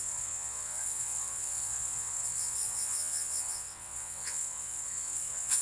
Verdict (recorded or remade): remade